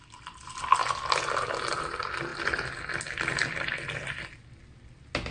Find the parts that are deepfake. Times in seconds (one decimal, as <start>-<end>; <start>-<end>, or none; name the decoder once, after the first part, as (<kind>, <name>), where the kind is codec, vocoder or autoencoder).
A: none